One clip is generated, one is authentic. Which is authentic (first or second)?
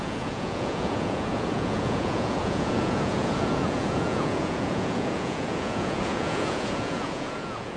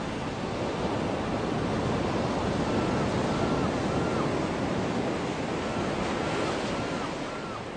second